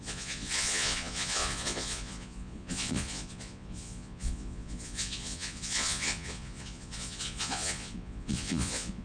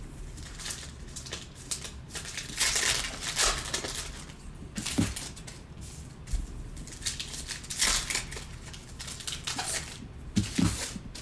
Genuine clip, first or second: second